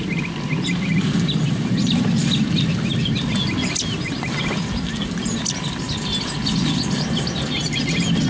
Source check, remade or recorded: recorded